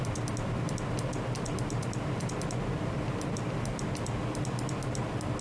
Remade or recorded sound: recorded